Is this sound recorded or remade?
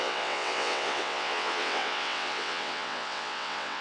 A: remade